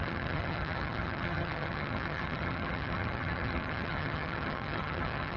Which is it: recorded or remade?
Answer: remade